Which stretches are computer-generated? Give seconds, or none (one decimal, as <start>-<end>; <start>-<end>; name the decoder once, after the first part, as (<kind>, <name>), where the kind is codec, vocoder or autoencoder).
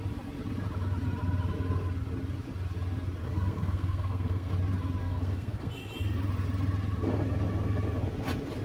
3.2-4.5 (codec, SNAC); 5.0-5.7